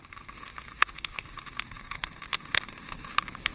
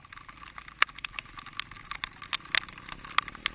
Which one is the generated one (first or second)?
first